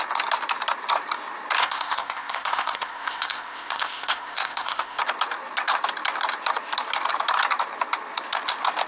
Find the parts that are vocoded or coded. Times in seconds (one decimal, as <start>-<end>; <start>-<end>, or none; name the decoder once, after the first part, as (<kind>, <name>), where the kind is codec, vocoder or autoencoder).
1.6-5.0 (codec, ZipCodec)